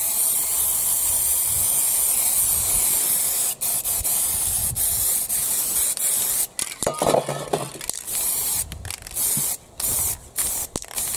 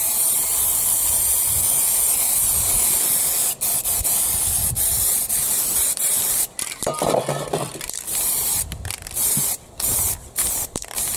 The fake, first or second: second